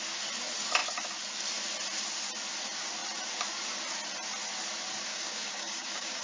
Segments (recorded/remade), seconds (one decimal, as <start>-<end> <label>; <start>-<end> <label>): 0.0-5.1 recorded; 5.1-6.2 remade

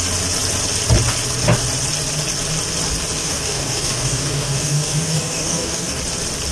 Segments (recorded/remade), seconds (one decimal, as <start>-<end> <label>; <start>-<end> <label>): 0.0-3.2 recorded; 3.2-6.0 remade; 6.0-6.5 recorded

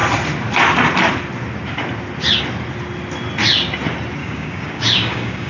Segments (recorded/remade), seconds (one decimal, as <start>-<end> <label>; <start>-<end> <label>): 0.0-4.2 recorded; 4.2-5.5 remade

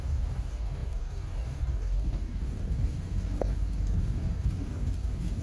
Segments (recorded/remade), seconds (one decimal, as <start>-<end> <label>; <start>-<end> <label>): 0.0-5.4 remade

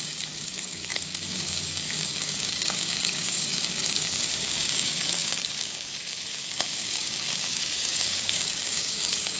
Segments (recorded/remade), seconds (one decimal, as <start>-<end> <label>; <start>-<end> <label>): 0.0-9.4 remade

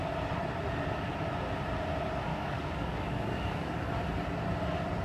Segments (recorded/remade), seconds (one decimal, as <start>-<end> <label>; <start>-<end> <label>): 0.0-2.3 recorded; 2.3-3.9 remade; 3.9-5.0 recorded

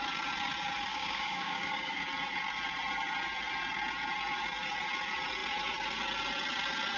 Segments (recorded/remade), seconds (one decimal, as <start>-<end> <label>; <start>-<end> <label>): 0.0-0.9 recorded; 0.9-2.0 remade; 2.0-7.0 recorded

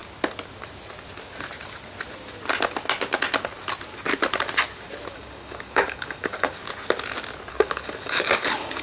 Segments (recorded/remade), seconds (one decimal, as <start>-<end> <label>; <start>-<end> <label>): 0.0-5.1 recorded; 5.1-6.6 remade; 6.6-7.5 recorded; 7.5-8.8 remade